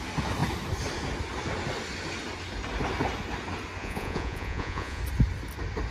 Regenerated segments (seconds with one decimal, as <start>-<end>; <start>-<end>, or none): 3.8-5.0